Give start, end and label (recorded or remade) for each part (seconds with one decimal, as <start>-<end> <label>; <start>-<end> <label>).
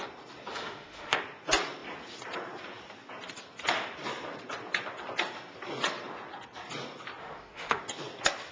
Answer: 0.0-0.5 recorded; 0.5-1.2 remade; 1.2-7.2 recorded; 7.2-7.8 remade; 7.8-8.5 recorded